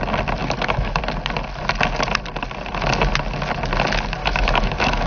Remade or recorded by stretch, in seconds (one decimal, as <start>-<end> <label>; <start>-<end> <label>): 0.0-0.4 recorded; 0.4-1.0 remade; 1.0-4.2 recorded; 4.2-5.1 remade